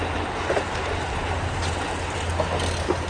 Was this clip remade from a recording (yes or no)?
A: no